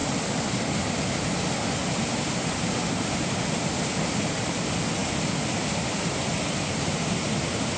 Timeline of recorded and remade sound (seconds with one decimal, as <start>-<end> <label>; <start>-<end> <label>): 0.0-7.8 recorded